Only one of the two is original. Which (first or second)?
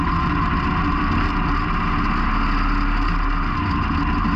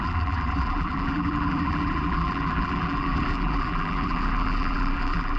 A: first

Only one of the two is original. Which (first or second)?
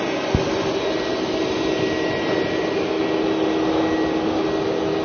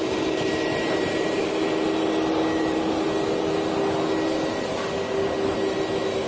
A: first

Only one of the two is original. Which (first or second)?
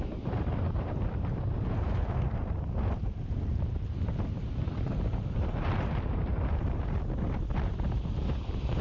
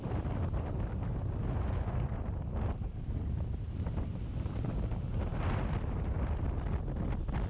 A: second